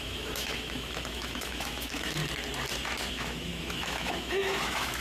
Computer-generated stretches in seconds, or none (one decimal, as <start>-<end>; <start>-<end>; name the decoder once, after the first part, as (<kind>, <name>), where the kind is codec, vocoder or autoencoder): 0.0-2.2 (autoencoder, DAC-VAE); 3.1-5.0